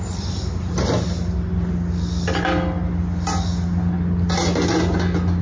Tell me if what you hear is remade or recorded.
recorded